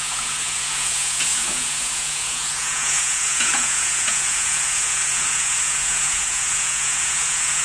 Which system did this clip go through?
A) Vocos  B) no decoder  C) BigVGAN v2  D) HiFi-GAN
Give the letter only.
A